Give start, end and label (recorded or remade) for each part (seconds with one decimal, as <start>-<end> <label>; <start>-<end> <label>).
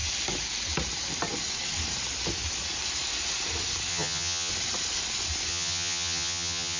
0.0-3.9 recorded; 3.9-4.5 remade; 4.5-5.5 recorded; 5.5-6.8 remade